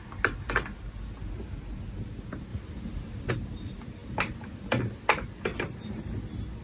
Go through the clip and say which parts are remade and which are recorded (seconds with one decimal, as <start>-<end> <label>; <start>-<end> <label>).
0.0-6.6 recorded